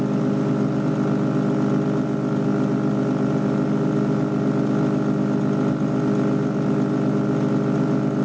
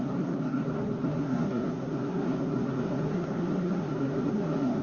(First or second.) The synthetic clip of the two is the second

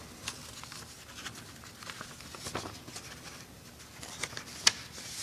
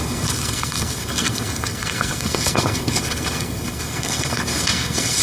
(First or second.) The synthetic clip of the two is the second